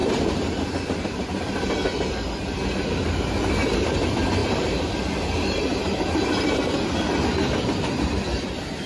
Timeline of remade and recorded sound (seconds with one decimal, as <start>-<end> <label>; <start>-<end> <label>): 0.0-4.4 recorded; 4.4-4.9 remade; 4.9-8.9 recorded